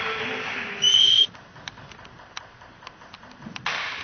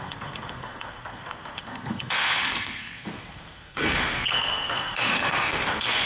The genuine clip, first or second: first